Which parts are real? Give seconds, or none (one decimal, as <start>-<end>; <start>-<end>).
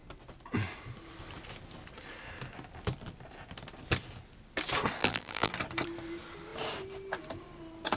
0.0-5.0; 5.5-8.0